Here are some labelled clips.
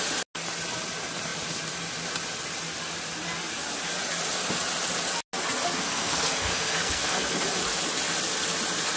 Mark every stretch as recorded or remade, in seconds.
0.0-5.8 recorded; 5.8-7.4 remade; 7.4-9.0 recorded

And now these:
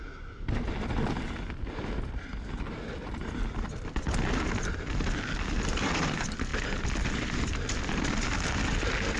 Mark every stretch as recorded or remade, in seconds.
0.0-9.2 recorded

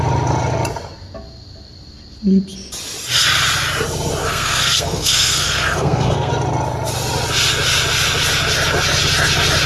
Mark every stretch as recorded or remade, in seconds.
0.0-4.2 recorded; 4.2-6.3 remade; 6.3-9.7 recorded

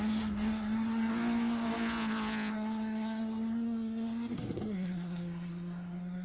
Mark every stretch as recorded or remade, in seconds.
0.0-1.1 remade; 1.1-2.5 recorded; 2.5-6.2 remade

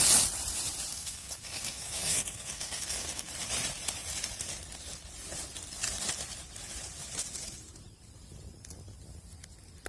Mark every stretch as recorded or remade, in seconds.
0.0-0.9 recorded; 0.9-3.3 remade; 3.3-9.9 recorded

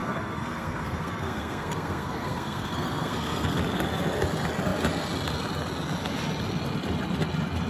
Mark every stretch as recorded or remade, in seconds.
0.0-3.6 remade; 3.6-7.7 recorded

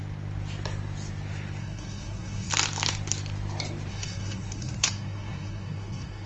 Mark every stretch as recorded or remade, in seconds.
0.0-1.6 recorded; 1.6-2.5 remade; 2.5-3.9 recorded; 3.9-6.3 remade

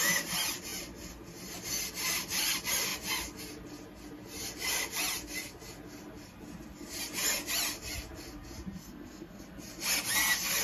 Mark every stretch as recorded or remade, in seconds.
0.0-8.8 recorded; 8.8-9.4 remade; 9.4-10.6 recorded